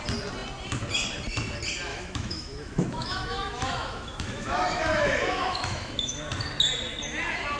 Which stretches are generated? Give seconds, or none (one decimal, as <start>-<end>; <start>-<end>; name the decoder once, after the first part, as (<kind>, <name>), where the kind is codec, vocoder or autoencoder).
1.9-6.2 (autoencoder, DAC-VAE)